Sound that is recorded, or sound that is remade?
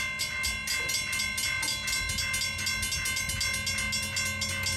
recorded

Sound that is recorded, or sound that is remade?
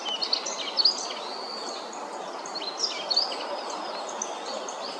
recorded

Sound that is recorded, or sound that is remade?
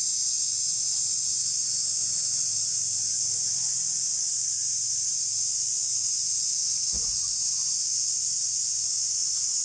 remade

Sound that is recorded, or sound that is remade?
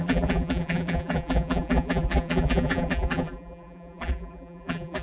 remade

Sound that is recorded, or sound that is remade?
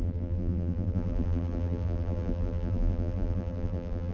remade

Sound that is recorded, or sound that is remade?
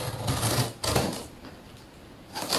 recorded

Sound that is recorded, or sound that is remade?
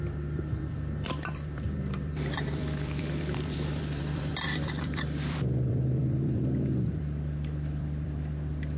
remade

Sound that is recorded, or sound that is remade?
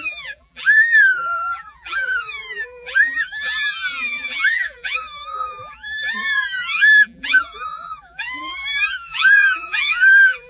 remade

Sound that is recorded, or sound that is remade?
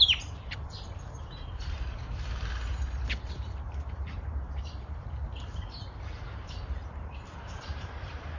remade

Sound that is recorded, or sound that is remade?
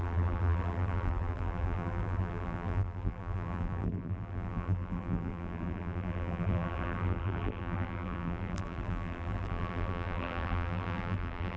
remade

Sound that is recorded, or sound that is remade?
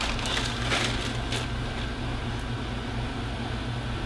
recorded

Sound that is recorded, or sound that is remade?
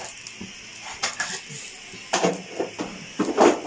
recorded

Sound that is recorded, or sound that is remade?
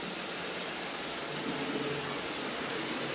recorded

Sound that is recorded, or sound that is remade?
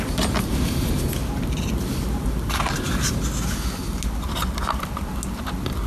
recorded